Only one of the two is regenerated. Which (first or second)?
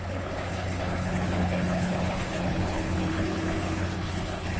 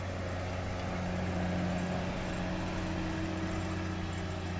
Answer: first